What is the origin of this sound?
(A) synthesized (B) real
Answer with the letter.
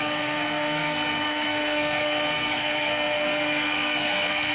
A